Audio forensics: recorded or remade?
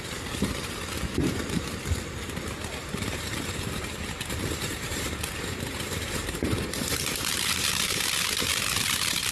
remade